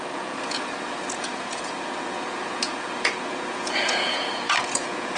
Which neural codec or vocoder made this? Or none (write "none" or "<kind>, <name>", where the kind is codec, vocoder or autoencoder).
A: vocoder, Vocos